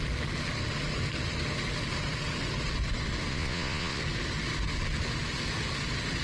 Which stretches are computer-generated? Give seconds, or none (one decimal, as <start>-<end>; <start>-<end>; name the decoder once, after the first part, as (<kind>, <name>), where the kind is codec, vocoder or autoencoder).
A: 3.3-4.0 (vocoder, Vocos)